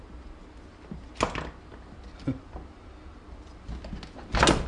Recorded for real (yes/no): yes